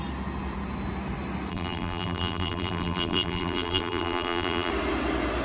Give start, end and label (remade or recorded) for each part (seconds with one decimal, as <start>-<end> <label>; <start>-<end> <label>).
0.0-1.5 recorded; 1.5-4.7 remade; 4.7-5.4 recorded